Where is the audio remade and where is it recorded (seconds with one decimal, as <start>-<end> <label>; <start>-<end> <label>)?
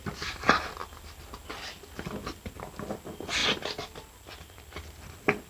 0.0-5.5 recorded